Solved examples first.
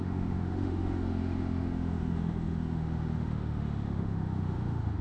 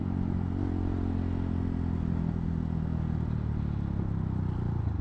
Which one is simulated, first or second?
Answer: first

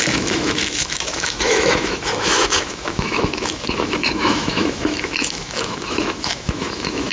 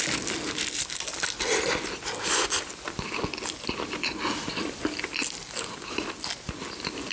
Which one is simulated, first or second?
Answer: first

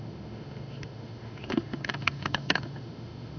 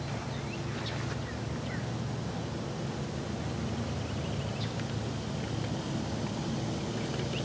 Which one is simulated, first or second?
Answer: first